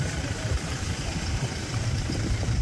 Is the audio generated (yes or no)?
yes